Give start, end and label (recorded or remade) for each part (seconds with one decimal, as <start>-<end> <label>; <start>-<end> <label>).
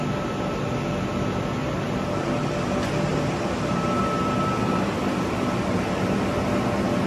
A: 0.0-1.6 recorded; 1.6-2.3 remade; 2.3-3.1 recorded; 3.1-4.0 remade; 4.0-7.1 recorded